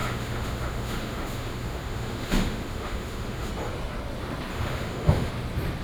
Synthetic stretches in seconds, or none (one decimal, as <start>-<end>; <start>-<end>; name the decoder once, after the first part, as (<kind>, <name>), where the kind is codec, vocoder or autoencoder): 0.0-3.5 (autoencoder, DAC-VAE); 4.5-5.3